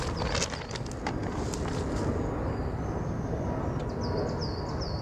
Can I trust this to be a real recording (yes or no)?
yes